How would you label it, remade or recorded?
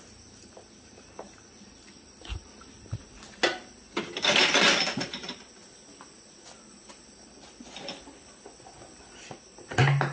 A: recorded